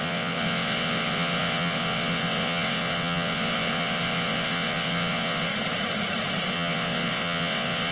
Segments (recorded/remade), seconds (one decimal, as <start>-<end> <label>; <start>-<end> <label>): 0.0-5.5 remade; 5.5-6.5 recorded; 6.5-7.9 remade